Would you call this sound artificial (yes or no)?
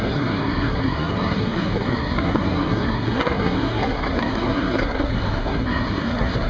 yes